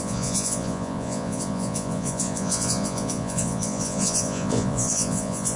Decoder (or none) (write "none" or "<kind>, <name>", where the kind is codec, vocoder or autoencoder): vocoder, Vocos